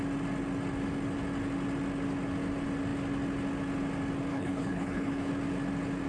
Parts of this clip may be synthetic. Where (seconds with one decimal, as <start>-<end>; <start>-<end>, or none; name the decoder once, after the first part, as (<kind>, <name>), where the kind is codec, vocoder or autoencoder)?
4.3-5.3 (codec, HILCodec)